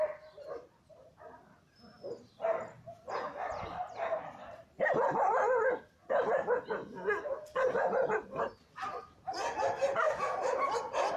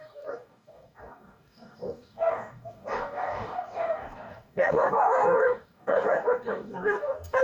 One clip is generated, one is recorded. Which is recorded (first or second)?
first